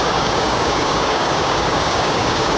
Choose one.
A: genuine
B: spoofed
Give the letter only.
B